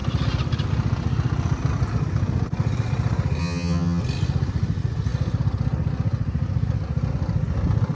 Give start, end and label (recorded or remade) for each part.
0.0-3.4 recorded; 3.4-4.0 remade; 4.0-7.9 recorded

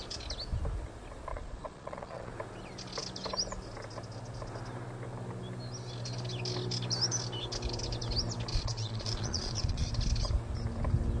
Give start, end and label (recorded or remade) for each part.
0.0-1.3 recorded; 1.3-2.3 remade; 2.3-8.5 recorded; 8.5-9.9 remade; 9.9-11.2 recorded

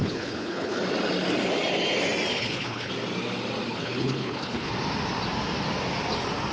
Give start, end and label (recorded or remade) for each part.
0.0-0.8 remade; 0.8-2.3 recorded; 2.3-2.9 remade; 2.9-3.7 recorded; 3.7-4.7 remade; 4.7-6.5 recorded

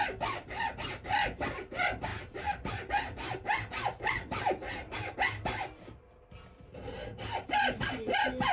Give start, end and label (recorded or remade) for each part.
0.0-8.5 recorded